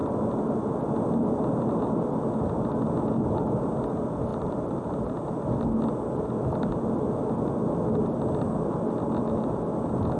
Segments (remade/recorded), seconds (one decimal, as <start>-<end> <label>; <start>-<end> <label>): 0.0-4.3 recorded; 4.3-5.0 remade; 5.0-10.2 recorded